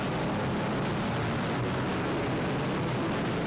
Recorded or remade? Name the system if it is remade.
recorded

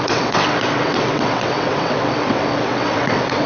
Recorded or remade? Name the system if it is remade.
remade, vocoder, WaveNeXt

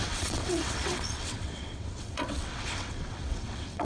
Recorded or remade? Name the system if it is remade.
remade, vocoder, WaveNeXt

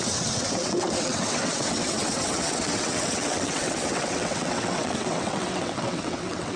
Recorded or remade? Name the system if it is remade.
remade, vocoder, WaveNeXt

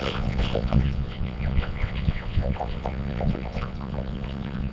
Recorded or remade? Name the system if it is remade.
remade, vocoder, WaveNeXt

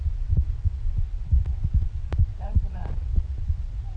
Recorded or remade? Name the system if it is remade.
remade, vocoder, WaveNeXt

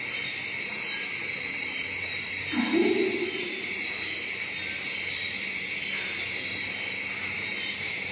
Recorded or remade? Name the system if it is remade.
recorded